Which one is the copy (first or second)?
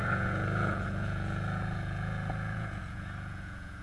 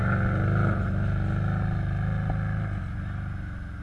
first